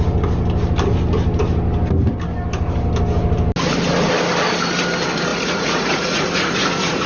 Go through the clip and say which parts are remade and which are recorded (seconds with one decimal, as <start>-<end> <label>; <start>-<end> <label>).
0.0-5.3 recorded; 5.3-7.1 remade